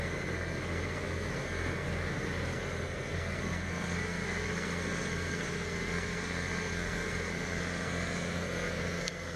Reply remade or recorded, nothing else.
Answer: remade